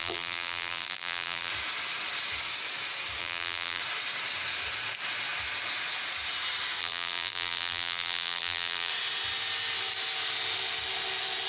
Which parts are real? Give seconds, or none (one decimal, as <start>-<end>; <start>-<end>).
1.5-3.2; 3.8-6.8; 8.9-11.5